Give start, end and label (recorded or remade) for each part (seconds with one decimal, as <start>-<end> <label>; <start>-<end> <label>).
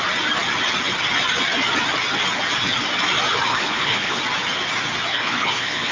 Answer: 0.0-3.5 recorded; 3.5-4.2 remade; 4.2-5.1 recorded; 5.1-5.9 remade